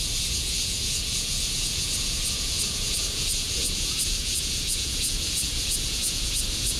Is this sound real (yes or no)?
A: no